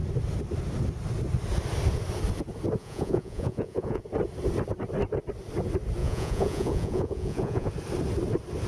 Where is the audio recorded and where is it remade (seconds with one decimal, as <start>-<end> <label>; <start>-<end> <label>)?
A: 0.0-2.8 recorded; 2.8-4.0 remade; 4.0-6.0 recorded; 6.0-7.7 remade; 7.7-8.7 recorded